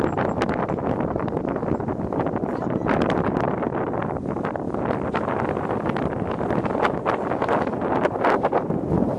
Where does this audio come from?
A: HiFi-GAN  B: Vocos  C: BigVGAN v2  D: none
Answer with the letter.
D